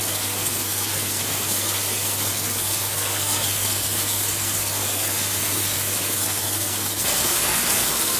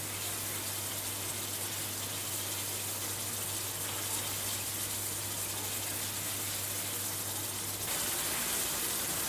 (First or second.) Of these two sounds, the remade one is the first